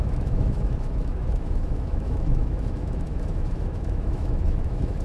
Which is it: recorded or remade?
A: remade